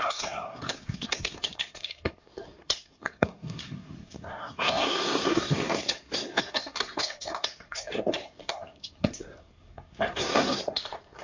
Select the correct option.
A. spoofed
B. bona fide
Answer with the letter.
A